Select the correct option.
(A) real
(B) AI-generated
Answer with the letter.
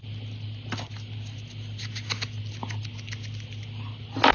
A